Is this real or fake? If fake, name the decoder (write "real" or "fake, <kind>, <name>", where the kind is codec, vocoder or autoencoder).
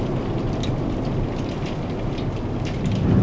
real